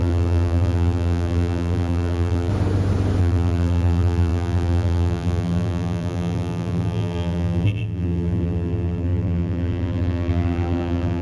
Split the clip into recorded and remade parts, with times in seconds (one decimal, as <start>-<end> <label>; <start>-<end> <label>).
0.0-2.5 remade; 2.5-3.2 recorded; 3.2-11.2 remade